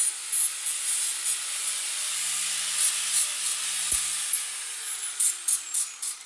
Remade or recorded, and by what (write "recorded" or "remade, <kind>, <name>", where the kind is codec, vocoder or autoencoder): recorded